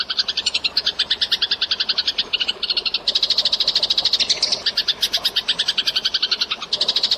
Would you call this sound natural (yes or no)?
yes